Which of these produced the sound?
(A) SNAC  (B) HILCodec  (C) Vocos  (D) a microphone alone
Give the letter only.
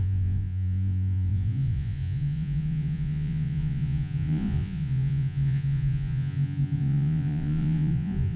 C